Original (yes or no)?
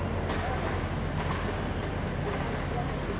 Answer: yes